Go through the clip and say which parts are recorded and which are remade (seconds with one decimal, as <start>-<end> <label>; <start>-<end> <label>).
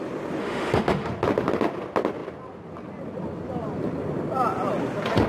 0.0-0.4 recorded; 0.4-1.1 remade; 1.1-5.3 recorded